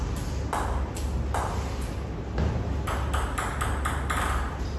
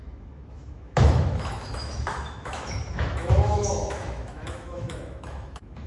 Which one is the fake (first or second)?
second